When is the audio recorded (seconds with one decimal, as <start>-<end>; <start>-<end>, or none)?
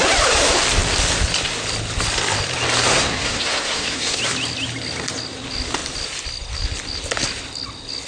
0.0-2.9; 4.2-8.1